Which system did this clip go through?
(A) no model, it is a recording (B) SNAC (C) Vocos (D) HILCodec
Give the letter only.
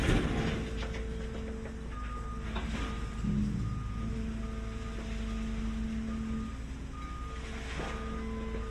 A